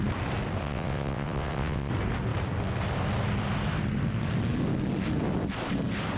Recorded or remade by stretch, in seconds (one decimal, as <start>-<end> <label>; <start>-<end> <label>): 0.0-0.6 recorded; 0.6-1.9 remade; 1.9-6.2 recorded